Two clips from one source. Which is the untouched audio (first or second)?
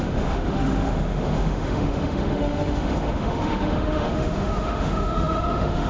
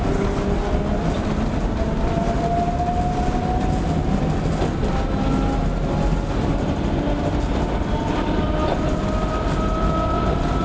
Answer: second